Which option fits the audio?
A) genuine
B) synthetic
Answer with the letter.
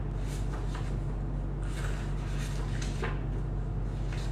A